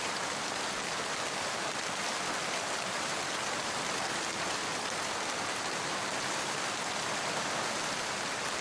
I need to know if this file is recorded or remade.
remade